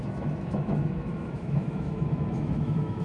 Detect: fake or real fake